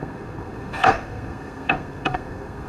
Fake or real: fake